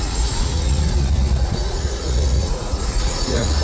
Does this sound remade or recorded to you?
remade